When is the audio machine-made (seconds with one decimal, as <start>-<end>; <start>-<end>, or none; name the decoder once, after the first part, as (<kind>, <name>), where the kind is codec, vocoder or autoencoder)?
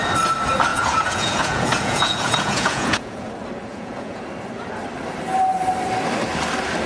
0.7-3.3 (vocoder, Vocos); 3.7-4.2